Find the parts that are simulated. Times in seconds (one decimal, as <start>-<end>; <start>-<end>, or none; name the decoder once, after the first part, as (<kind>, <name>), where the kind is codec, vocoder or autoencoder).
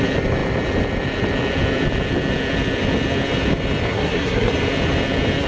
3.9-4.5 (codec, SNAC)